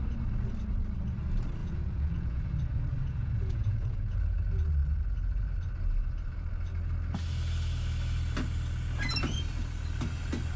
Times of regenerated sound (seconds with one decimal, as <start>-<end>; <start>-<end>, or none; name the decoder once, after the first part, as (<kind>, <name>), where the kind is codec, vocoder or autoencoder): 1.6-2.5 (vocoder, Vocos); 3.2-4.2

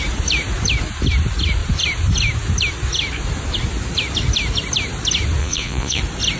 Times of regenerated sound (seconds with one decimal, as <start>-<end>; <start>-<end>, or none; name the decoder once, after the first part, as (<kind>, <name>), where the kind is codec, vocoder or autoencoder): 5.4-6.0 (vocoder, Vocos)

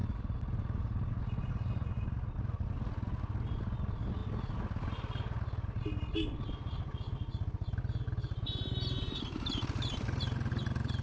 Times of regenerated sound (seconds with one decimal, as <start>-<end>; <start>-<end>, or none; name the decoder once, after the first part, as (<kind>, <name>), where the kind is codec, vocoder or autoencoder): none